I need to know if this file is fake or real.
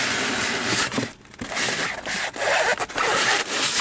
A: real